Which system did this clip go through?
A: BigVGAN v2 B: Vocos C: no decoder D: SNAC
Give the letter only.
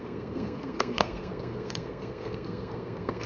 D